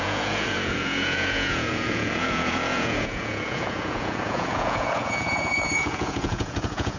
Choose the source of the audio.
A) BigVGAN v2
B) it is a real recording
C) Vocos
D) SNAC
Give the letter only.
C